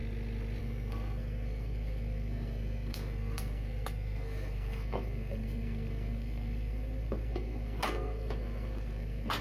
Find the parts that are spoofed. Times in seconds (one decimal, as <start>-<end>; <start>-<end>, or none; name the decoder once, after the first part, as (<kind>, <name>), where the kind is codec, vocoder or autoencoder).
0.6-9.4 (codec, SNAC)